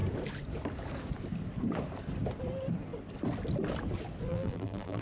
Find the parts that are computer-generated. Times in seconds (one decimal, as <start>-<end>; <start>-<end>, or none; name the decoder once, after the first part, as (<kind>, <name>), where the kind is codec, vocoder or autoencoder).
4.3-5.0 (vocoder, BigVGAN v2)